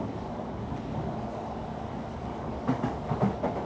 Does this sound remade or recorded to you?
remade